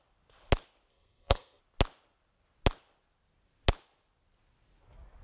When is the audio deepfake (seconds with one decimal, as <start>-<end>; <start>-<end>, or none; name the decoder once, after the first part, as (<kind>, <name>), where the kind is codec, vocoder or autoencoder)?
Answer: 0.9-1.6 (codec, SNAC)